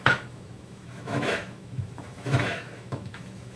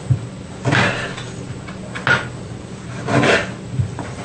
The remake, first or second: first